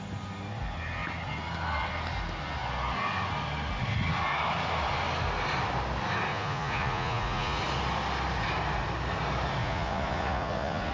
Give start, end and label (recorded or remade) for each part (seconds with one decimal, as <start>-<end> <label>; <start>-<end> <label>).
0.0-6.3 recorded; 6.3-7.6 remade; 7.6-9.6 recorded; 9.6-10.9 remade